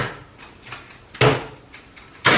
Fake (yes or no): no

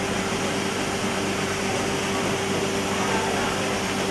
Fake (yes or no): no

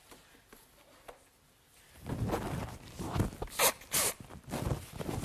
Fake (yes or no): no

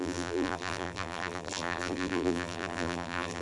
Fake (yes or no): yes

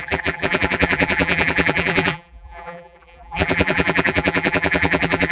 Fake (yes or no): yes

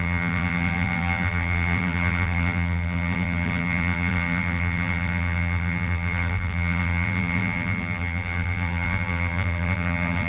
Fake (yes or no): yes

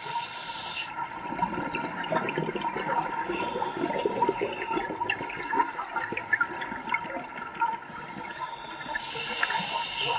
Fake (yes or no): no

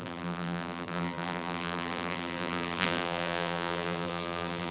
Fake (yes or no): yes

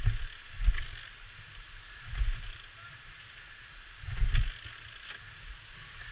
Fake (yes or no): no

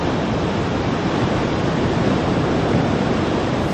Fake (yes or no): yes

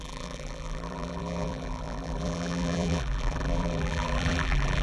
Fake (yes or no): yes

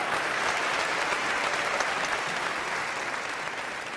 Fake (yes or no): yes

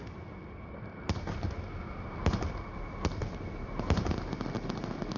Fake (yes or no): no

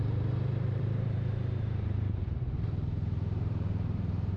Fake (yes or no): yes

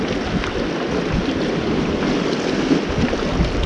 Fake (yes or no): no